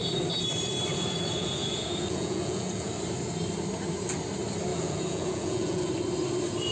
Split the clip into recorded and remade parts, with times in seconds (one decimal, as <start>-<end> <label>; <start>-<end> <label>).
0.0-0.9 recorded; 0.9-2.9 remade; 2.9-4.7 recorded; 4.7-5.9 remade; 5.9-6.7 recorded